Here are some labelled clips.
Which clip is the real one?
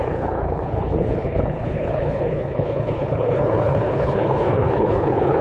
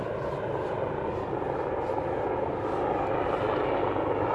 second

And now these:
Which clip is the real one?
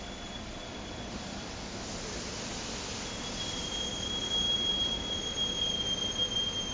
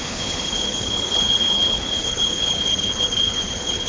first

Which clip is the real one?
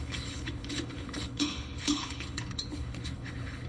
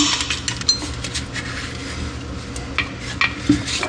second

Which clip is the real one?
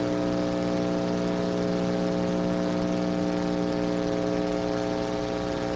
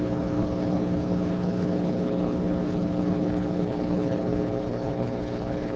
first